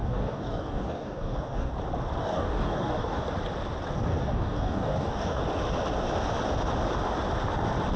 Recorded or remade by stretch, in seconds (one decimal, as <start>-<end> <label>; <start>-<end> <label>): 0.0-1.7 remade; 1.7-2.2 recorded; 2.2-3.2 remade; 3.2-4.1 recorded; 4.1-5.4 remade; 5.4-8.0 recorded